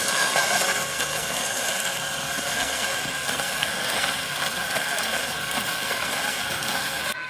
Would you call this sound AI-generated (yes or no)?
yes